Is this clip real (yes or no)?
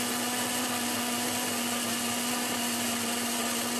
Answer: yes